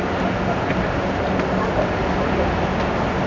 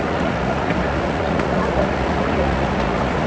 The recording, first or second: first